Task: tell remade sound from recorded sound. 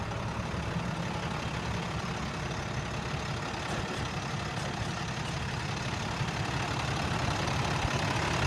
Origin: recorded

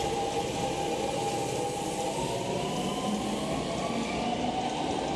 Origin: recorded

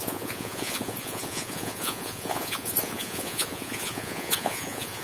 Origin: remade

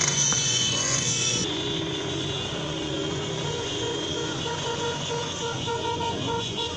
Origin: remade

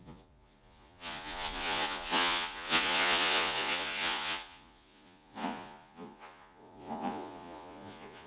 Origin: remade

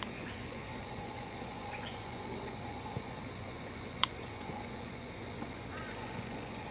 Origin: remade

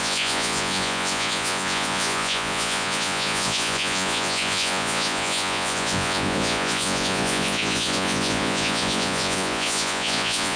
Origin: remade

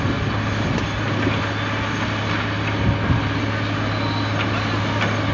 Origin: recorded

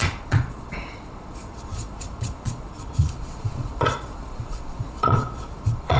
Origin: remade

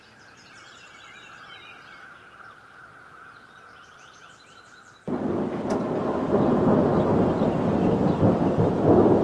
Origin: recorded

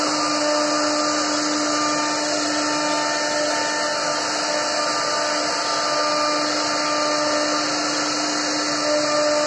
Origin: recorded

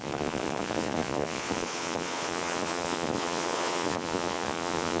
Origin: remade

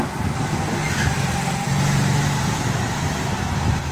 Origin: recorded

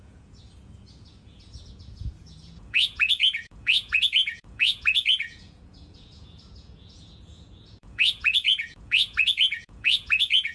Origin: remade